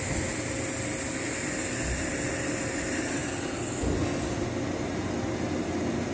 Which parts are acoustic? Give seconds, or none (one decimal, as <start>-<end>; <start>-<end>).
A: 0.0-6.1